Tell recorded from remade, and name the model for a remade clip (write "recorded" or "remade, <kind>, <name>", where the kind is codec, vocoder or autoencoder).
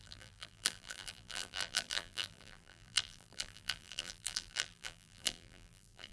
remade, vocoder, BigVGAN v2